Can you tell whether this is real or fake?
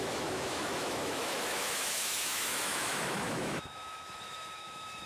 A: fake